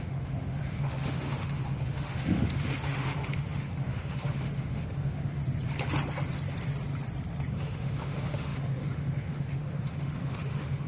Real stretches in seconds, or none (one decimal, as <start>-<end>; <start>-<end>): 5.4-7.5